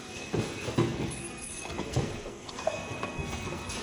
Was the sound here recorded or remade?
remade